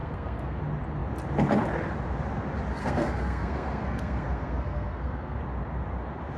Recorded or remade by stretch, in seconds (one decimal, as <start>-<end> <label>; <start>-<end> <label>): 0.0-0.6 remade; 0.6-2.8 recorded; 2.8-5.4 remade; 5.4-6.4 recorded

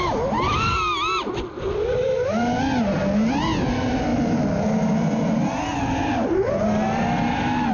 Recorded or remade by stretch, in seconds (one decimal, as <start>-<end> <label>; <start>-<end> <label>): 0.0-7.7 recorded